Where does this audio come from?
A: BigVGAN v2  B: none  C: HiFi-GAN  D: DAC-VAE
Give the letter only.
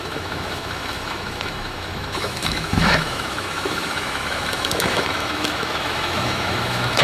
D